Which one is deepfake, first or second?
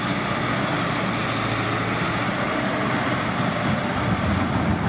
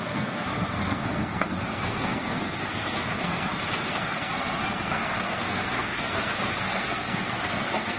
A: second